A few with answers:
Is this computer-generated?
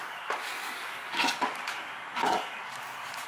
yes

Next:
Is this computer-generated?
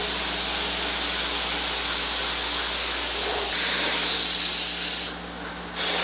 no